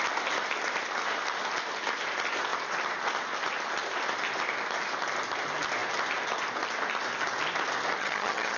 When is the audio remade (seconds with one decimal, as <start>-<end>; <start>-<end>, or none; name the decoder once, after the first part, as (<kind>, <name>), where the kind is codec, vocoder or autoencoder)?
8.0-8.6 (vocoder, HiFi-GAN)